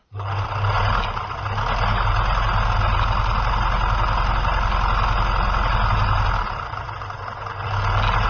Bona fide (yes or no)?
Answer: yes